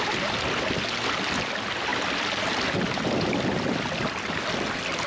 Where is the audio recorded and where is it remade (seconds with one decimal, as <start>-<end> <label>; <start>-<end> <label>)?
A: 0.0-5.1 recorded